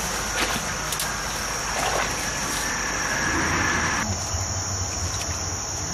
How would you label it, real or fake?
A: real